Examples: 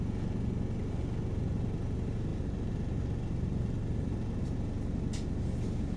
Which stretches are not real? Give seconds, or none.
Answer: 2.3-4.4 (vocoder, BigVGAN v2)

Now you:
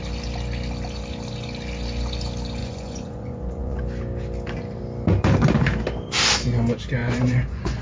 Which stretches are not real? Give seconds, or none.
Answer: 2.6-3.8 (vocoder, Vocos); 7.0-7.8

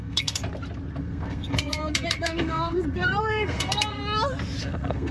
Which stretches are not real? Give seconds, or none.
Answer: 0.0-0.4 (codec, SNAC); 1.0-4.0; 4.6-5.1